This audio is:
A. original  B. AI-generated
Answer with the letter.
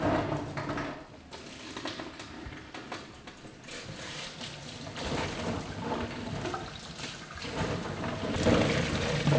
A